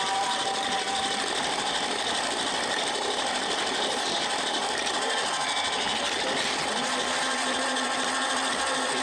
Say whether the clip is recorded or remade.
recorded